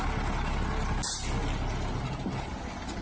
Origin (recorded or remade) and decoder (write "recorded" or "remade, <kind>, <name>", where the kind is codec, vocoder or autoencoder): recorded